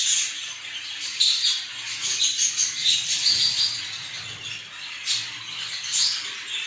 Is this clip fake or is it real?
real